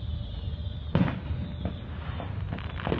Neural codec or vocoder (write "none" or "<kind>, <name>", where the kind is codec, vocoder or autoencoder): none